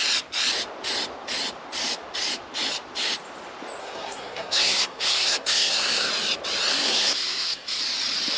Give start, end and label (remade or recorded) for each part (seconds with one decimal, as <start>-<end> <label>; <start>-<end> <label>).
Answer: 0.0-3.8 recorded; 3.8-6.1 remade; 6.1-6.7 recorded; 6.7-7.8 remade; 7.8-8.4 recorded